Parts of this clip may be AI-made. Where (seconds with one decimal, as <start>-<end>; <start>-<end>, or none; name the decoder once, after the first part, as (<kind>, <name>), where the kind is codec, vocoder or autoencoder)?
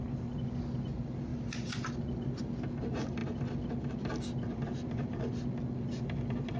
none